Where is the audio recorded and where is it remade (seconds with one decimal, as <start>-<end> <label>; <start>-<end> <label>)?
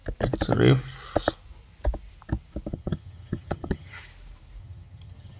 0.0-2.7 recorded; 2.7-4.0 remade; 4.0-4.6 recorded; 4.6-5.4 remade